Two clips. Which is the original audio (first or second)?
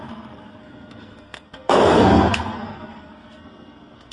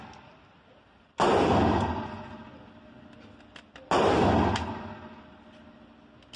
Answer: second